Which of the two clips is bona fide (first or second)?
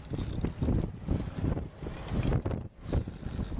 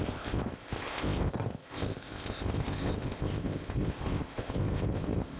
first